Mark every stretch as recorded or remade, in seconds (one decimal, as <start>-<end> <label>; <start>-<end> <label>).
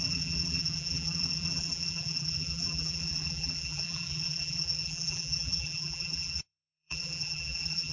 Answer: 0.0-7.9 remade